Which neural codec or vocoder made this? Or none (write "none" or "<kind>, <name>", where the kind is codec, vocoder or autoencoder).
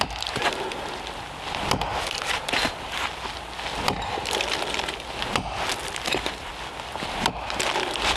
none